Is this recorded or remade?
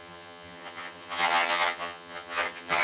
remade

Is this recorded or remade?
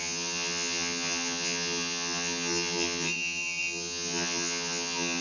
remade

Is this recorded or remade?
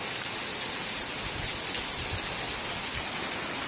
recorded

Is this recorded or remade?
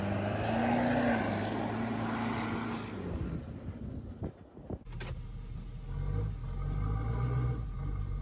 recorded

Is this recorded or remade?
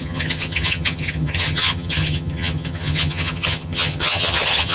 remade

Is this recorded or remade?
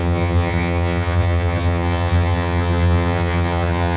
remade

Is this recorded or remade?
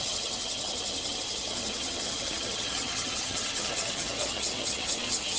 remade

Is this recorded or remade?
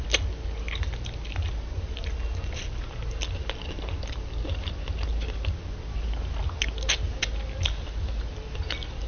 recorded